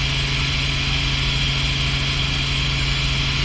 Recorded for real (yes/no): yes